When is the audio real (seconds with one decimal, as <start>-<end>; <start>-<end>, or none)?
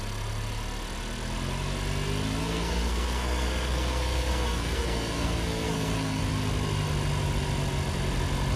0.0-2.4; 6.2-8.6